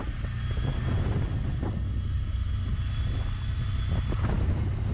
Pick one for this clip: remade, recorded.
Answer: recorded